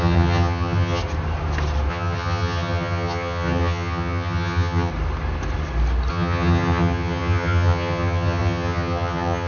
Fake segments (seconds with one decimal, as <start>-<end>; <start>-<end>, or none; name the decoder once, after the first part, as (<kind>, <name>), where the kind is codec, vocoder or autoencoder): 0.0-1.0 (vocoder, HiFi-GAN); 1.9-4.9; 6.1-9.5